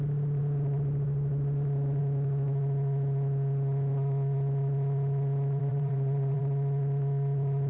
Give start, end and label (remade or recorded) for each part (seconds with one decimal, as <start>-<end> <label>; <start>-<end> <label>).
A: 0.0-5.6 recorded; 5.6-6.4 remade; 6.4-7.7 recorded

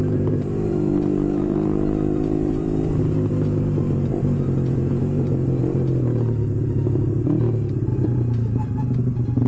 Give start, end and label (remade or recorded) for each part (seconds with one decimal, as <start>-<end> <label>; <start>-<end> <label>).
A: 0.0-7.9 remade; 7.9-9.5 recorded

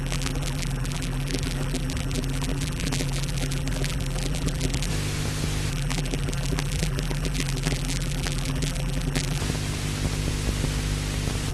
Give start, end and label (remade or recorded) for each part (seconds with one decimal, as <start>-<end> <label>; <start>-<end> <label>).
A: 0.0-4.9 remade; 4.9-5.7 recorded; 5.7-9.4 remade; 9.4-11.5 recorded